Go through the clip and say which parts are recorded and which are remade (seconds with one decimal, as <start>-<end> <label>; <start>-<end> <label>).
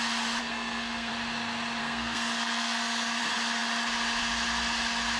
0.0-0.4 recorded; 0.4-1.1 remade; 1.1-1.8 recorded; 1.8-3.2 remade; 3.2-5.2 recorded